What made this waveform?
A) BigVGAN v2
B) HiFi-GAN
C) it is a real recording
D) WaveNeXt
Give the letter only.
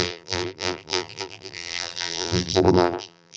A